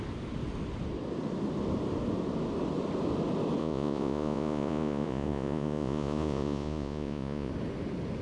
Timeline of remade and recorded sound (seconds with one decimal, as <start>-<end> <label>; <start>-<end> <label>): 0.0-3.6 recorded; 3.6-7.5 remade; 7.5-8.2 recorded